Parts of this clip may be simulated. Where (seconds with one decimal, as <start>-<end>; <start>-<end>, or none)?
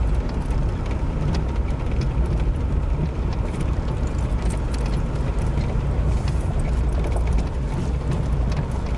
0.7-3.7